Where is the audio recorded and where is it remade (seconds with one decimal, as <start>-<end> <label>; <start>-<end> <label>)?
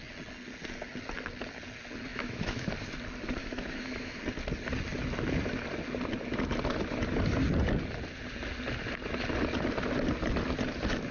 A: 0.0-2.1 recorded; 2.1-2.7 remade; 2.7-3.4 recorded; 3.4-4.2 remade; 4.2-11.1 recorded